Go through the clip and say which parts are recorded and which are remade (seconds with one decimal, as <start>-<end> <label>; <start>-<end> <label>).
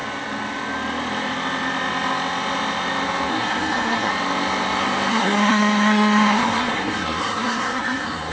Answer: 0.0-3.3 recorded; 3.3-4.1 remade; 4.1-5.1 recorded; 5.1-8.3 remade